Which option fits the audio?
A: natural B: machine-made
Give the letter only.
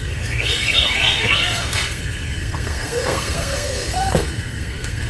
B